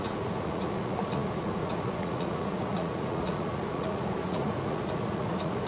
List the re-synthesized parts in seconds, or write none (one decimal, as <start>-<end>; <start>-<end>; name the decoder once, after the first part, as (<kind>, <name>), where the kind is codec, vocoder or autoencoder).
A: 0.0-5.7 (vocoder, Vocos)